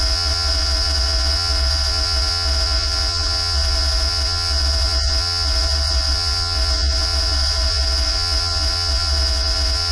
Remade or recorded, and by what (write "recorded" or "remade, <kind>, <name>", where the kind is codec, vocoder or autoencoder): remade, vocoder, Vocos